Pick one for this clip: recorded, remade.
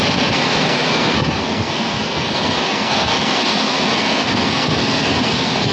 remade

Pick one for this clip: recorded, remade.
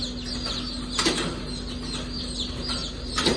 recorded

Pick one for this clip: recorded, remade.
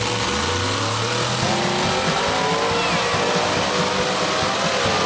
recorded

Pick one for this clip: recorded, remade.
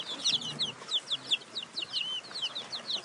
recorded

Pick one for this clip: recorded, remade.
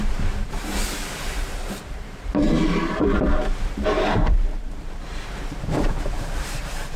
remade